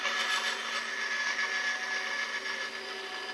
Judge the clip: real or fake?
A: real